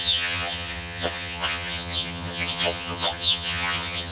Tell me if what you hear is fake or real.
fake